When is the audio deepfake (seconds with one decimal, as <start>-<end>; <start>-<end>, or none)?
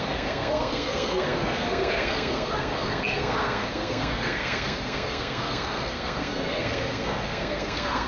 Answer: 0.0-8.1